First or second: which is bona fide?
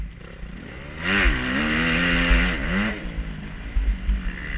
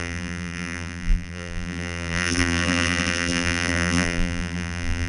first